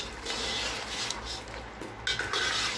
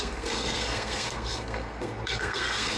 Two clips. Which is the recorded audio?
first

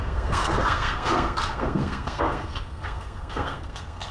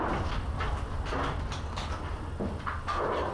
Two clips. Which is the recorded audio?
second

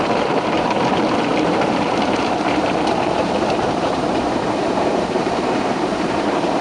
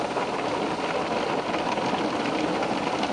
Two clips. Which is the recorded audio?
second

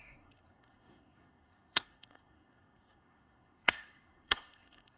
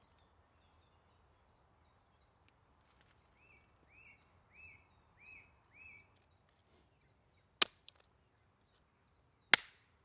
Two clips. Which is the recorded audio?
second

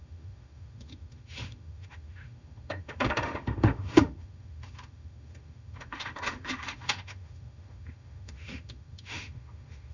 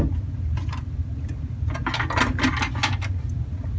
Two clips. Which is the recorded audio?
second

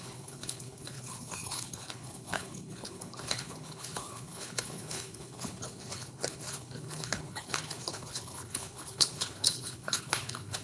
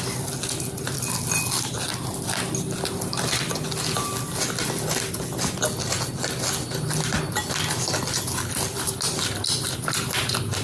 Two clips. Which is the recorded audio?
second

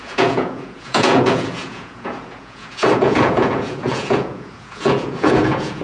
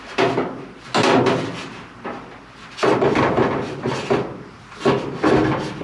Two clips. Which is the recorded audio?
second